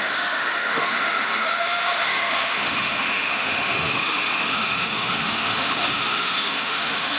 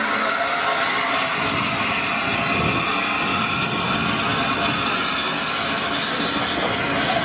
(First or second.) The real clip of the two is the second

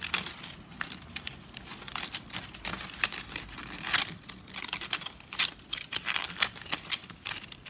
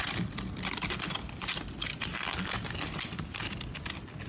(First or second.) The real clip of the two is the second